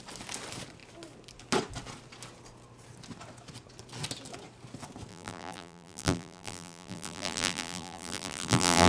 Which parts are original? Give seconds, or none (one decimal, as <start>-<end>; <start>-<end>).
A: 0.0-5.1

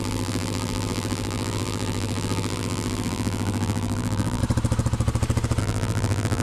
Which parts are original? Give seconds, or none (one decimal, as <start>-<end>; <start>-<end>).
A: 4.4-5.6

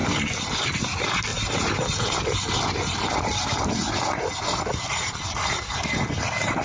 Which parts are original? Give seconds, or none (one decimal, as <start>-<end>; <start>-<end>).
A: 0.6-1.3; 3.6-6.6

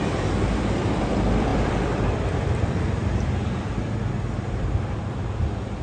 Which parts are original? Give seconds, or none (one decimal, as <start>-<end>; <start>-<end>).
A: none

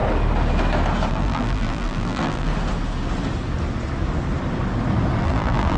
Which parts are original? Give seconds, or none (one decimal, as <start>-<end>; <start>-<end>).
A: 0.0-1.1; 2.5-5.2

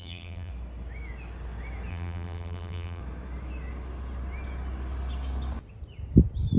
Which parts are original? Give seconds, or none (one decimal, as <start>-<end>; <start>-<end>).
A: 0.5-1.9; 3.0-6.6

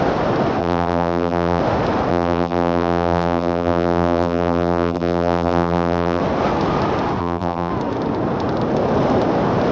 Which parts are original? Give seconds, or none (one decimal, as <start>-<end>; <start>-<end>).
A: 0.0-0.6; 1.6-2.1; 6.2-7.2; 7.7-9.7

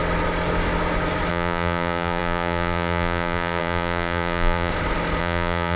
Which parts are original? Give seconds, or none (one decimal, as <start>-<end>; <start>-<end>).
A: 0.0-1.3; 4.7-5.2